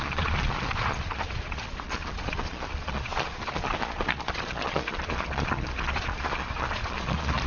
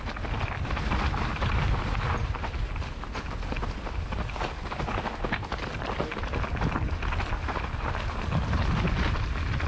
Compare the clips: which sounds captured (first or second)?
second